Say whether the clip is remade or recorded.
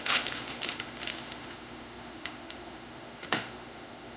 remade